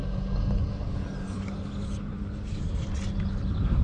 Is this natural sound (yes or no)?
yes